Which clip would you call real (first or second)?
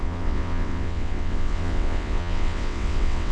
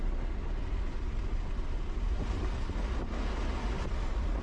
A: second